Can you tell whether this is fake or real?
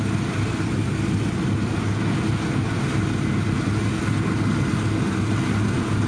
real